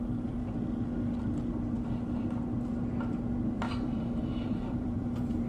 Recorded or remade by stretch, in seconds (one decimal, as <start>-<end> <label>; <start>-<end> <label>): 0.0-0.4 remade; 0.4-3.7 recorded; 3.7-5.5 remade